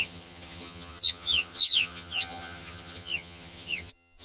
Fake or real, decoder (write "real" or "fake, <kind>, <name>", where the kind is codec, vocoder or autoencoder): fake, vocoder, HiFi-GAN